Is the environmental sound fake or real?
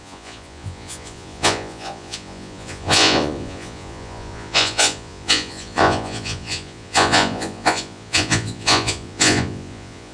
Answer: fake